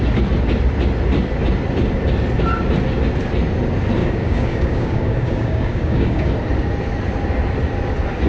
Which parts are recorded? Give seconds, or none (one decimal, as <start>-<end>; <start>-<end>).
0.0-4.0; 6.3-8.3